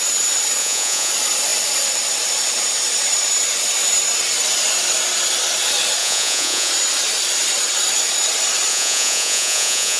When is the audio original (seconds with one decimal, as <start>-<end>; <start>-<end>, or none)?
0.0-0.6; 1.1-6.0; 6.7-8.7